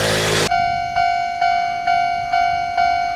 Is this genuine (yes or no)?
yes